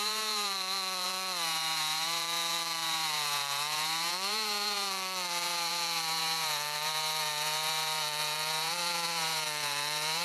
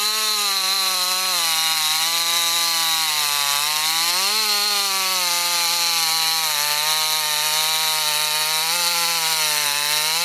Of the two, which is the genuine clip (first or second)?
second